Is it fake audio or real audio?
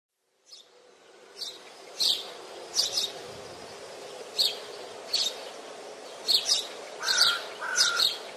real